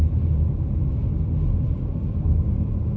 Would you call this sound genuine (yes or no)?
yes